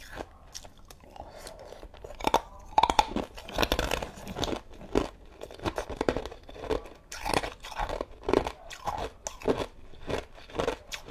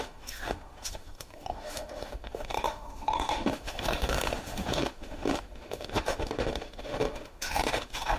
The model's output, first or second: second